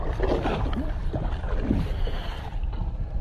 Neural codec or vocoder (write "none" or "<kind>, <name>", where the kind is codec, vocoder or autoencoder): none